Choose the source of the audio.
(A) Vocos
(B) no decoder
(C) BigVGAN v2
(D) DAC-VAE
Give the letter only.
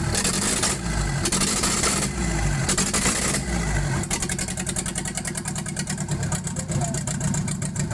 B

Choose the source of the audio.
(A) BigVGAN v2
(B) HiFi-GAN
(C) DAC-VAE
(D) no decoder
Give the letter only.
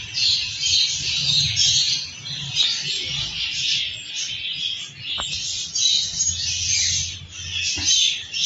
D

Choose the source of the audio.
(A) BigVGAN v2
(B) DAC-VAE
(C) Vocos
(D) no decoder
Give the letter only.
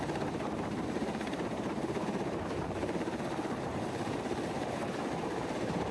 A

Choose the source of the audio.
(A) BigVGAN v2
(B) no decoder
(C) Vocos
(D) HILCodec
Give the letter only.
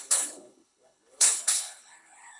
D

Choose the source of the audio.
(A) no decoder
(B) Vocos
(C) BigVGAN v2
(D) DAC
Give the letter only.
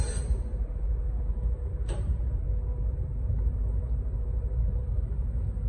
C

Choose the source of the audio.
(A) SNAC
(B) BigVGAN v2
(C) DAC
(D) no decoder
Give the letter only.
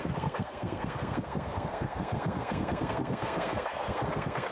A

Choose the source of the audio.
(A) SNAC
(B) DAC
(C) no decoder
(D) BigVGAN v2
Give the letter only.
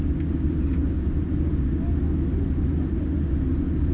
C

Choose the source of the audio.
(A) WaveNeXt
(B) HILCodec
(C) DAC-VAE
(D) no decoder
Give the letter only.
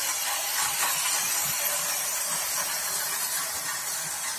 D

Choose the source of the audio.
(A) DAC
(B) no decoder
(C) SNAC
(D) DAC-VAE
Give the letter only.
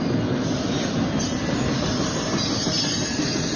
B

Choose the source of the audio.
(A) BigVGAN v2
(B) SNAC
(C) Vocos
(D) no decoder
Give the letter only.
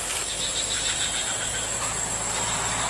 D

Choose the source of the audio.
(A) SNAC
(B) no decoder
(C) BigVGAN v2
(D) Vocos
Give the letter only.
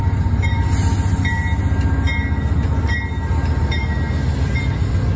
B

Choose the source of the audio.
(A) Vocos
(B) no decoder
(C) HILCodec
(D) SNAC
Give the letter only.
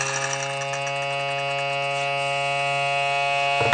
B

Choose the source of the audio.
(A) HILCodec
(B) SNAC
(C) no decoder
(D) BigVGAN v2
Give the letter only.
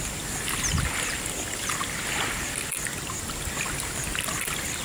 C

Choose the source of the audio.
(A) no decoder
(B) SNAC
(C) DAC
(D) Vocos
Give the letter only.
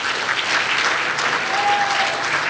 A